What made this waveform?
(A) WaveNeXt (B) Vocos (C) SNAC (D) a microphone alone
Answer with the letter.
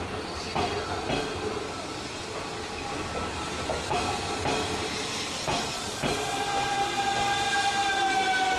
D